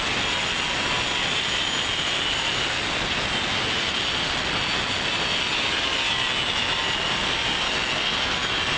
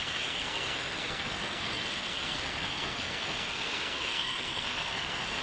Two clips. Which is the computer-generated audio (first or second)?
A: second